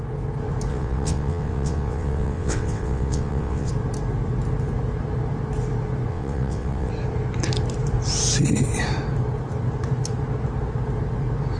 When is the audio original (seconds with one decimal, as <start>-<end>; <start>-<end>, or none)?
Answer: 0.0-0.7; 3.7-6.1; 6.9-11.6